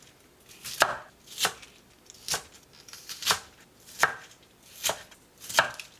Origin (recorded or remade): recorded